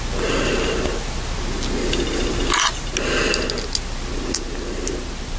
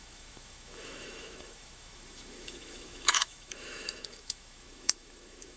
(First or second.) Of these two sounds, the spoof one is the second